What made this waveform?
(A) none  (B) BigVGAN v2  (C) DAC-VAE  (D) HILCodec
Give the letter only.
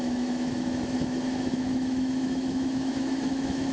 C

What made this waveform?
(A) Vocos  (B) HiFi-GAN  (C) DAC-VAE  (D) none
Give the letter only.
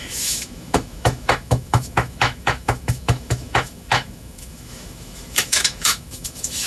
C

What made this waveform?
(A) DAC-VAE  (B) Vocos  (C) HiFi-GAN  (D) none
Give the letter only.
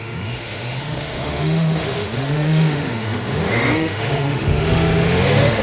A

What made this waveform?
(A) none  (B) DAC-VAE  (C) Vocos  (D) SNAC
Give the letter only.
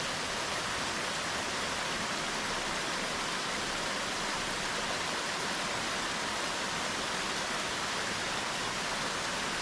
A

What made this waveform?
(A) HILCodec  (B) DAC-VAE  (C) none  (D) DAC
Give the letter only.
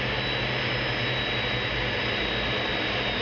C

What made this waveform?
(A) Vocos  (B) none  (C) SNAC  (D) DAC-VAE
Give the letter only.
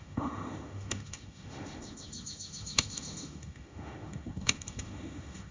D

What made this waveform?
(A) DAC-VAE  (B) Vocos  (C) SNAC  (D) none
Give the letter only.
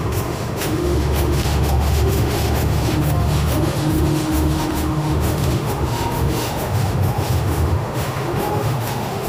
A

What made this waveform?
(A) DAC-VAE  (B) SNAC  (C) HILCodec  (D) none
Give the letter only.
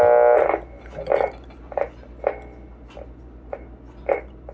D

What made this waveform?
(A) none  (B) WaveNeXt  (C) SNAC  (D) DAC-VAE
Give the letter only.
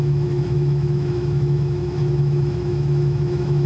D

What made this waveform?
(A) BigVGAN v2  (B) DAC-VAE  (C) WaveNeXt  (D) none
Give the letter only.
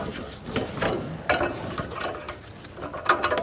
D